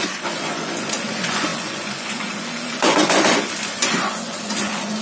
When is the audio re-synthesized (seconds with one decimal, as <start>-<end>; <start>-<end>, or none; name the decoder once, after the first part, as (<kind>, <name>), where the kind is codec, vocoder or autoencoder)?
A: 0.0-5.0 (vocoder, Vocos)